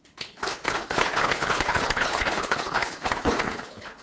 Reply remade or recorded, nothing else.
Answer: remade